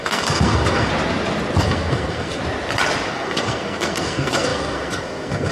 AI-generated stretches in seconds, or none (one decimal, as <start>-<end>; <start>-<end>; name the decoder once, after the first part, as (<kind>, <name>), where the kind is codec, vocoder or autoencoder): 0.0-0.9 (codec, SNAC); 1.6-2.4; 3.1-5.5